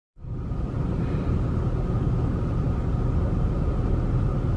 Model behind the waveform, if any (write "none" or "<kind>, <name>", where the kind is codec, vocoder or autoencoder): none